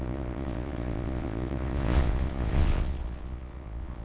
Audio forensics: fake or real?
fake